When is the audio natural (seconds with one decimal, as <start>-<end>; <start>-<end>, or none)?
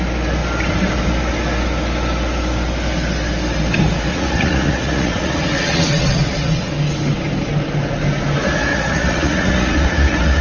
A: 0.0-4.1; 6.7-8.7